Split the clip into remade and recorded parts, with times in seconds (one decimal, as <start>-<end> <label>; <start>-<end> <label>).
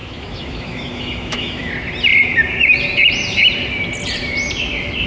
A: 0.0-1.7 remade; 1.7-5.1 recorded